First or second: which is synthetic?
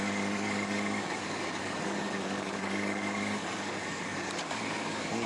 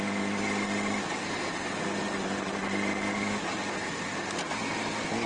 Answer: first